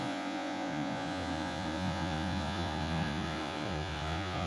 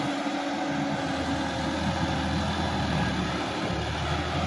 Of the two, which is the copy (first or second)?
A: first